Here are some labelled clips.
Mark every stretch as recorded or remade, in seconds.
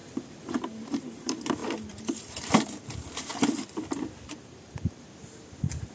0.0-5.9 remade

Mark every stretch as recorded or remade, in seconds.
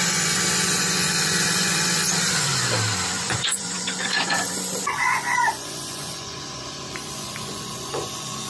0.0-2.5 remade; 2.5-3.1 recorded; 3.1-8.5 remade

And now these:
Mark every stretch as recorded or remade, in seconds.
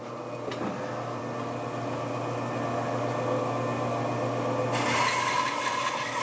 0.0-6.2 recorded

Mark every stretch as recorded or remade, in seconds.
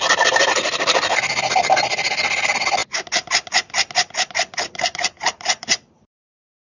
0.0-2.8 remade; 2.8-4.3 recorded; 4.3-6.8 remade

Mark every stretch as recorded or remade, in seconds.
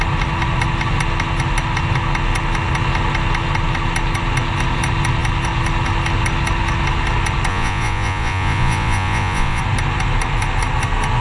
0.0-7.5 recorded; 7.5-9.6 remade; 9.6-11.2 recorded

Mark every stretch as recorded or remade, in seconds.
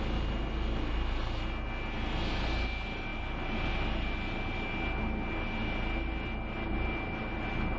0.0-7.8 recorded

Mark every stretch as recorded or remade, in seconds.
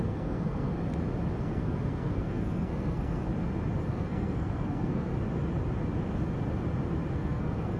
0.0-0.7 remade; 0.7-1.4 recorded; 1.4-3.3 remade; 3.3-3.9 recorded; 3.9-5.1 remade; 5.1-7.1 recorded; 7.1-7.8 remade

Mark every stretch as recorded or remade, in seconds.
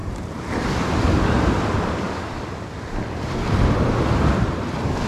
0.0-5.1 recorded